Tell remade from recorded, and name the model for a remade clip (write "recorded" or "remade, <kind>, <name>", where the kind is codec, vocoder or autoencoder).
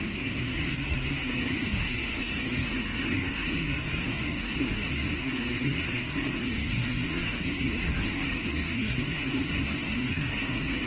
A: remade, codec, SNAC